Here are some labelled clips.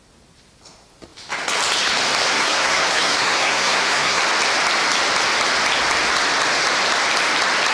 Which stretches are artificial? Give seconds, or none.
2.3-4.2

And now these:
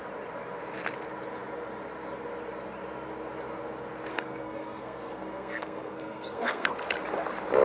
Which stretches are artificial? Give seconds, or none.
4.1-6.7

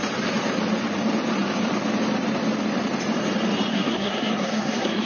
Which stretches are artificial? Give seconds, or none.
3.7-5.1

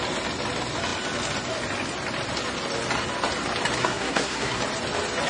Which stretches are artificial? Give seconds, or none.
3.8-4.6

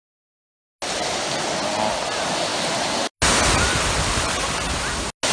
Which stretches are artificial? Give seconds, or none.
none

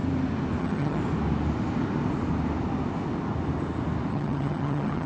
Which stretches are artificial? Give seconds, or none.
0.6-1.0; 4.1-5.1

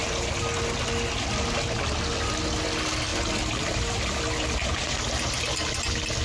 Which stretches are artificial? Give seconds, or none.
none

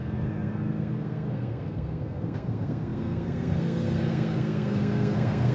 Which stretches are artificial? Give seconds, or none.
0.0-5.5